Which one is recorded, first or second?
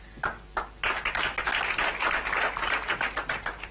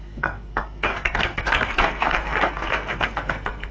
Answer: first